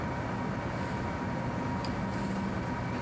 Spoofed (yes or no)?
no